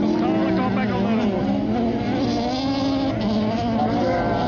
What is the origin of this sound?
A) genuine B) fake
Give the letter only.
A